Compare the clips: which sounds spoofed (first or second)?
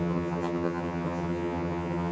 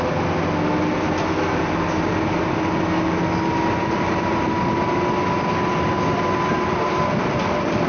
first